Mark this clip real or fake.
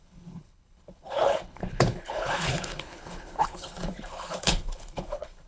fake